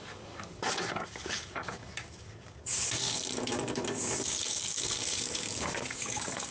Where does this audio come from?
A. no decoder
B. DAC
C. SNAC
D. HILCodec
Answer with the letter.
B